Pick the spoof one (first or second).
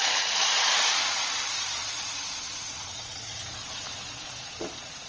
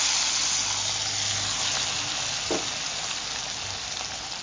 first